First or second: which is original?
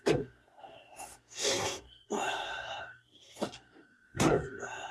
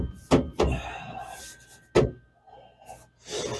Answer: second